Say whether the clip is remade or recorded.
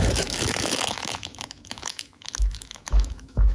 remade